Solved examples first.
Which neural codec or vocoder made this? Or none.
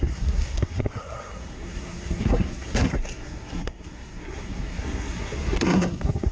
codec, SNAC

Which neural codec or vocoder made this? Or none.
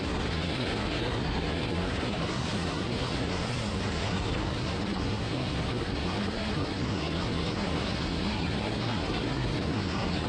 codec, SNAC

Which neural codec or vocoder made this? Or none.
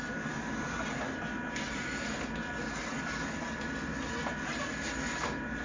none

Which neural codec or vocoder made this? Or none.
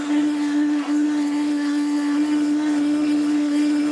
codec, SNAC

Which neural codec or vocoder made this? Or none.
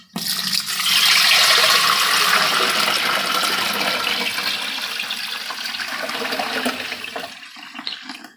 none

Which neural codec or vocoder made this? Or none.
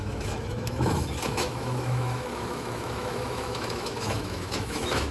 autoencoder, DAC-VAE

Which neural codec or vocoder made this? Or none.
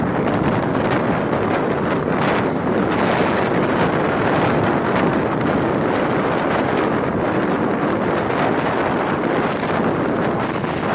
none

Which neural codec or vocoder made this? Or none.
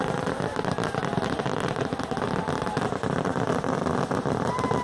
none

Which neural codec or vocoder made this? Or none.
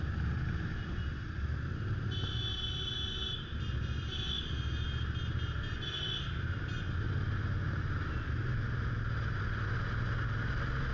none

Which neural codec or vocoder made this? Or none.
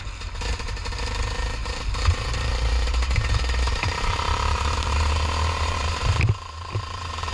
vocoder, BigVGAN v2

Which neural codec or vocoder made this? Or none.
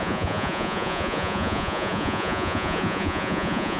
vocoder, Vocos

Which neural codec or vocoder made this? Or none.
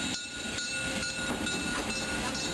none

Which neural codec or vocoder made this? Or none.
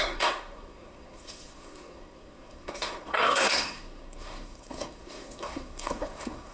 codec, SNAC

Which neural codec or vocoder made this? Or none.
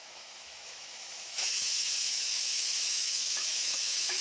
autoencoder, DAC-VAE